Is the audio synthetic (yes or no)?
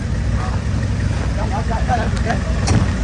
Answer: no